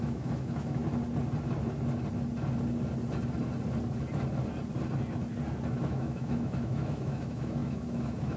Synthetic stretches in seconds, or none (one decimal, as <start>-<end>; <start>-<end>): 0.0-0.8; 5.8-8.4